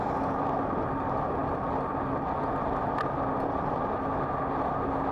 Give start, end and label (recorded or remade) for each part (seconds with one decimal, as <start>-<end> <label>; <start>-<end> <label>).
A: 0.0-5.1 recorded